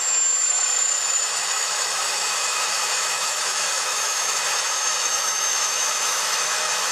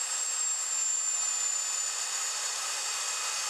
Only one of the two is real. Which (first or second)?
second